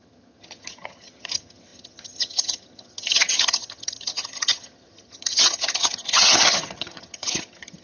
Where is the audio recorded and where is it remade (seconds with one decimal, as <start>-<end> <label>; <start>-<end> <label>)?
0.0-7.8 remade